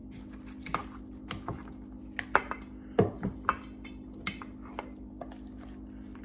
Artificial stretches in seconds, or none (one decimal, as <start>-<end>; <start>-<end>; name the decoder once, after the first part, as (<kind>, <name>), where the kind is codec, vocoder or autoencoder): none